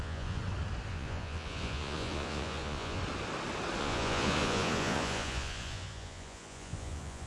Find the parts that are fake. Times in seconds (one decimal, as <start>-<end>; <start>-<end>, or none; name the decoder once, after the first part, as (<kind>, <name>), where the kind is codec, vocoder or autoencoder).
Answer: 0.0-0.4 (vocoder, Vocos); 0.9-3.0; 3.8-7.3